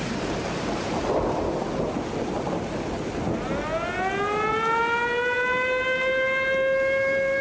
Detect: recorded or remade recorded